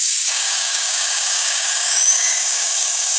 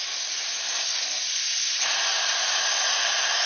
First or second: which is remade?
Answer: first